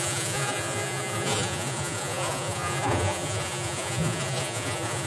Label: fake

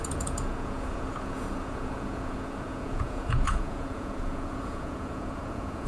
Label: fake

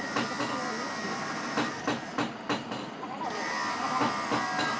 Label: real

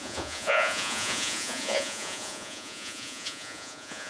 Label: fake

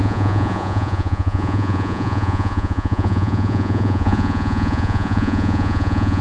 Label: fake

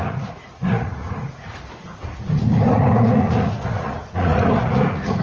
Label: fake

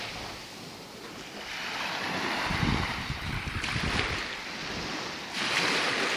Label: real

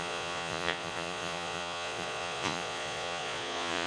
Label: fake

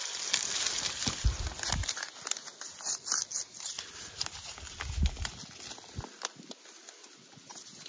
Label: real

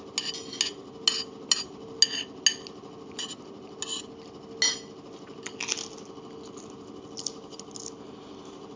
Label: real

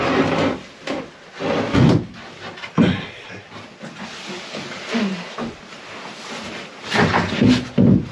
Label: real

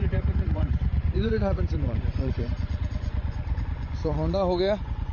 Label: fake